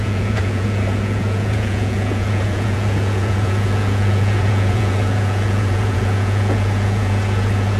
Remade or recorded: remade